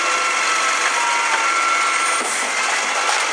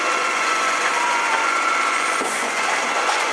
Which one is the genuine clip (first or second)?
first